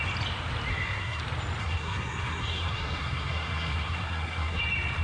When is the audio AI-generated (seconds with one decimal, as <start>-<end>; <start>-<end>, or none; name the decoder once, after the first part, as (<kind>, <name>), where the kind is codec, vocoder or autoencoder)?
0.7-1.2 (codec, SNAC); 1.6-4.6